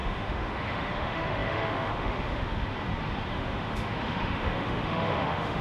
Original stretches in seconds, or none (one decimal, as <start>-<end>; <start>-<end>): 2.7-3.3